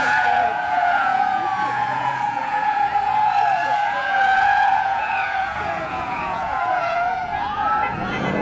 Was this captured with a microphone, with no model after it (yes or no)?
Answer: no